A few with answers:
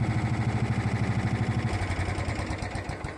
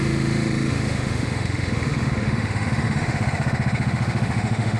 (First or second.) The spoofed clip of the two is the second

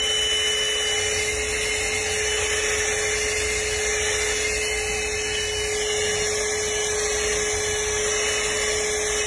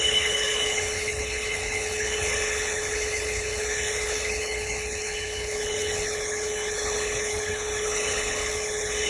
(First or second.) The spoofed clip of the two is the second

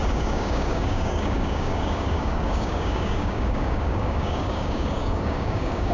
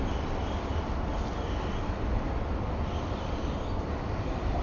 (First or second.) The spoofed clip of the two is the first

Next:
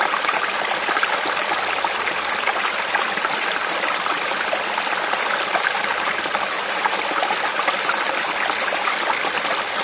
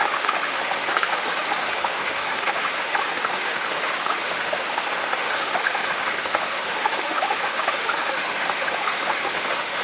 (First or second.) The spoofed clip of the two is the second